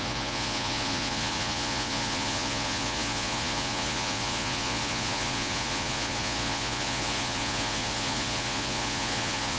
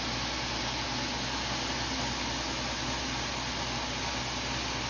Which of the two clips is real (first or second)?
second